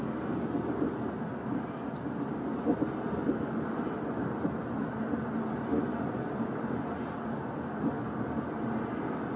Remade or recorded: recorded